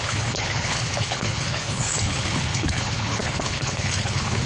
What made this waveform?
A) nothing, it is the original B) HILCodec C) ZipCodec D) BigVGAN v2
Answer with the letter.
B